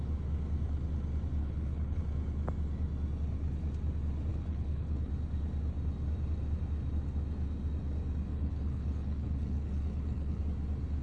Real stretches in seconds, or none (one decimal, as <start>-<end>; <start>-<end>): 0.0-1.4; 2.0-4.3; 5.1-8.3; 10.4-11.0

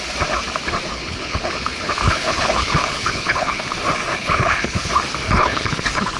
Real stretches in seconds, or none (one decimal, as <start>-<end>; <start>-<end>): 0.0-0.9; 3.6-4.1; 4.9-5.4

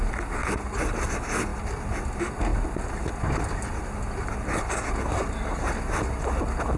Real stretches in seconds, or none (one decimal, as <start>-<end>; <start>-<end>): 0.0-6.8

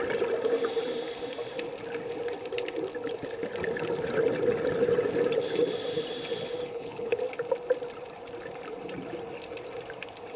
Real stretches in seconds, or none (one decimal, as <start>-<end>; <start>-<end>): 0.0-6.6; 7.2-10.4